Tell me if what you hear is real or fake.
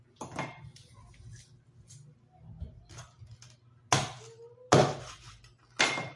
real